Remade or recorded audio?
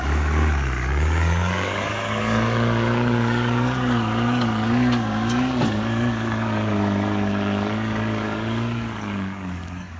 remade